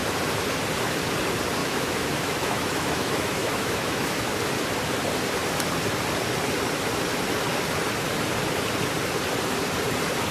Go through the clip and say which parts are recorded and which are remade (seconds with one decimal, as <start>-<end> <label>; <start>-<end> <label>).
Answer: 0.0-1.6 recorded; 1.6-4.3 remade; 4.3-10.3 recorded

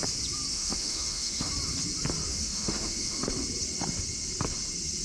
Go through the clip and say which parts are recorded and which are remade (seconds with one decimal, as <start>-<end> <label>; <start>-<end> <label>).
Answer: 0.0-0.5 recorded; 0.5-1.5 remade; 1.5-2.3 recorded; 2.3-3.2 remade; 3.2-5.0 recorded

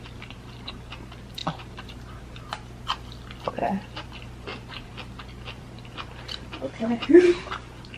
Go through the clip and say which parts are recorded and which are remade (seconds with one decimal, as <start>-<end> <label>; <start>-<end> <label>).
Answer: 0.0-8.0 recorded

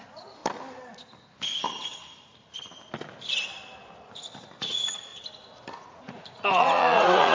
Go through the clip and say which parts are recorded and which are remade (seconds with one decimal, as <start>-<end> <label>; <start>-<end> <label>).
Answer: 0.0-0.4 remade; 0.4-4.6 recorded; 4.6-5.1 remade; 5.1-5.7 recorded; 5.7-7.3 remade

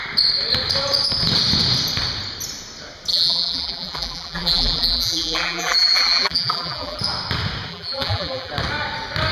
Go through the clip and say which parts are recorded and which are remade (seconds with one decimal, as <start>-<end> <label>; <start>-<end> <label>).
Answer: 0.0-3.1 recorded; 3.1-7.0 remade; 7.0-7.7 recorded; 7.7-8.5 remade; 8.5-9.3 recorded

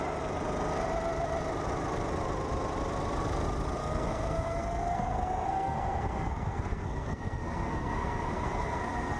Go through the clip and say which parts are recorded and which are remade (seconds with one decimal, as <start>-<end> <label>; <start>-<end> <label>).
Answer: 0.0-3.8 recorded; 3.8-9.2 remade

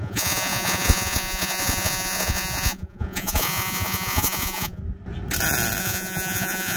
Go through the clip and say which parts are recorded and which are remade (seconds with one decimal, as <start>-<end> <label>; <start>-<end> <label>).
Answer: 0.0-4.8 remade; 4.8-5.8 recorded; 5.8-6.8 remade

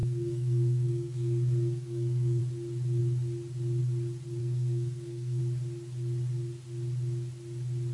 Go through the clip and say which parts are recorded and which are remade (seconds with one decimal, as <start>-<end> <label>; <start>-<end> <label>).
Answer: 0.0-2.4 remade; 2.4-4.4 recorded; 4.4-5.4 remade; 5.4-7.9 recorded